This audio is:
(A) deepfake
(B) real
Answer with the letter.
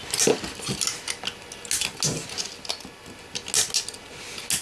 B